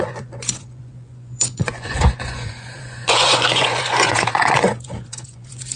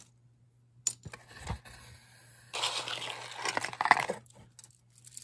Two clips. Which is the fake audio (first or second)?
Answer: first